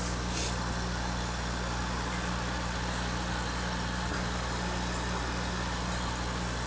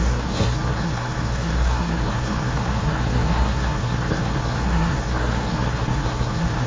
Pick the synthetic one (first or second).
second